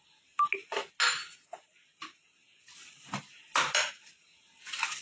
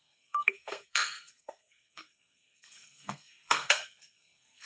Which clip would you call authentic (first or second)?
first